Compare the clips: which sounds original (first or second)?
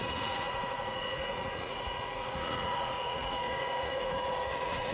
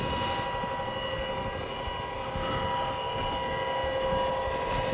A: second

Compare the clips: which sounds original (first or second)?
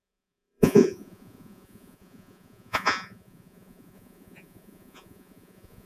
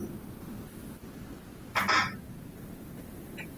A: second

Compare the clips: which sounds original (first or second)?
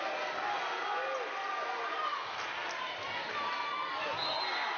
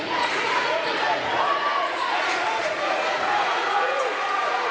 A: first